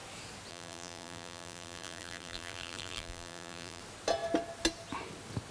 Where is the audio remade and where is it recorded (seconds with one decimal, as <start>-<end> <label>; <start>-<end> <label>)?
0.0-0.5 recorded; 0.5-3.8 remade; 3.8-5.5 recorded